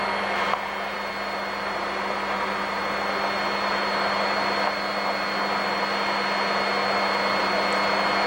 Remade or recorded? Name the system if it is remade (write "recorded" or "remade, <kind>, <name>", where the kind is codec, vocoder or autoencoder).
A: recorded